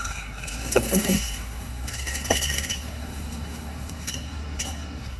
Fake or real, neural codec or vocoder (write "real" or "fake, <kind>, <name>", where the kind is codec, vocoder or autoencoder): fake, codec, SNAC